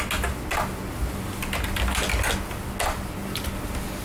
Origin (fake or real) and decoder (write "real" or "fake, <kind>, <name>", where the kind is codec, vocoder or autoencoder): real